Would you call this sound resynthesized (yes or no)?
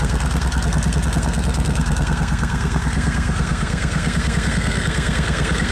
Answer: yes